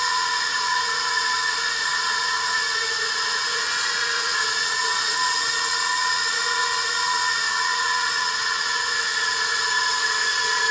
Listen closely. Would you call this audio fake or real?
fake